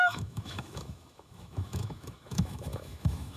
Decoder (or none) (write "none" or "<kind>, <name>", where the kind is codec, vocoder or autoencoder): autoencoder, DAC-VAE